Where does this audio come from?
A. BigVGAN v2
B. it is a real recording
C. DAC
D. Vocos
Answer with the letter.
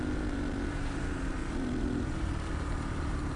A